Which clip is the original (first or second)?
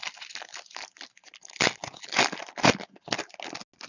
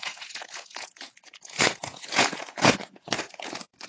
first